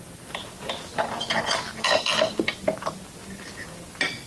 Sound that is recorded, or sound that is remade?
recorded